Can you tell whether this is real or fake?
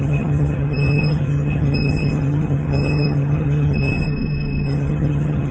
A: fake